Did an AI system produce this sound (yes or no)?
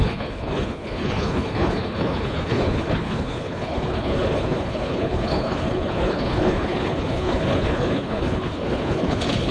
yes